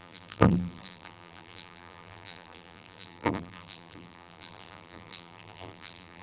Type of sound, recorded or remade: remade